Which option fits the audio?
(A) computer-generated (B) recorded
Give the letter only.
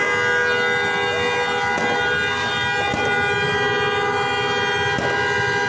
B